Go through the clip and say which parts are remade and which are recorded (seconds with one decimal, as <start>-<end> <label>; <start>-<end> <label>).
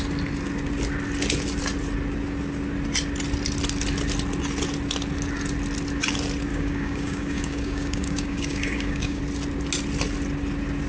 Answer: 0.0-6.5 recorded; 6.5-9.2 remade; 9.2-10.9 recorded